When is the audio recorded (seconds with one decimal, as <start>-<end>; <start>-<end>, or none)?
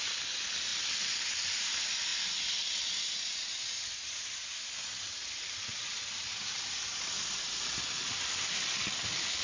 0.0-9.4